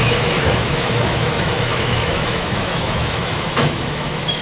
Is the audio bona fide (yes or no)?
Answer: no